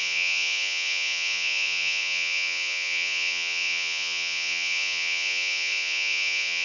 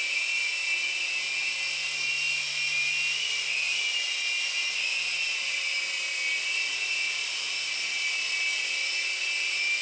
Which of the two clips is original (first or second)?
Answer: second